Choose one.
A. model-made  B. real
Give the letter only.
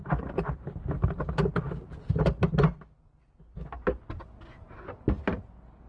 B